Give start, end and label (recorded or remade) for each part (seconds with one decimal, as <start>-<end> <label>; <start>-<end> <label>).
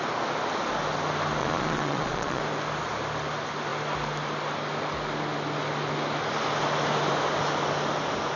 0.0-1.4 recorded; 1.4-2.4 remade; 2.4-8.4 recorded